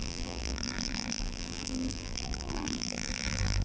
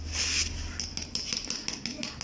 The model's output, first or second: first